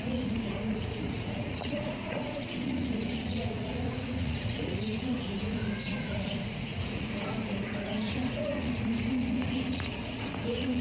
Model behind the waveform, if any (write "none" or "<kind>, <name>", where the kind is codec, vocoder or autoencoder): vocoder, Vocos